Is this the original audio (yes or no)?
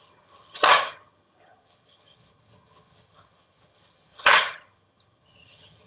no